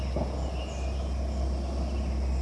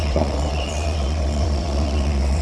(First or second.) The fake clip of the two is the second